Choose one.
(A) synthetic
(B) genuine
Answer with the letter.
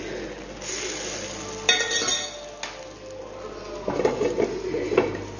B